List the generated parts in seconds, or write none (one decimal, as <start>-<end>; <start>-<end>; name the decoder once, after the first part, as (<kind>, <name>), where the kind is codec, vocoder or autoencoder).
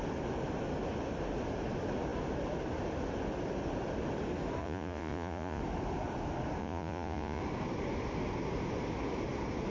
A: 4.6-5.6 (vocoder, Vocos); 6.6-7.4